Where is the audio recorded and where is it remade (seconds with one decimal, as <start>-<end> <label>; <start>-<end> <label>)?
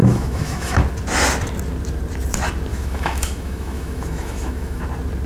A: 0.0-0.8 remade; 0.8-2.7 recorded; 2.7-4.8 remade; 4.8-5.3 recorded